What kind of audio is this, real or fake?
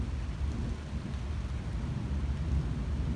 real